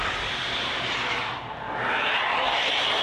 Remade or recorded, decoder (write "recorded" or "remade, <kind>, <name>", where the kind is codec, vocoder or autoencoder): recorded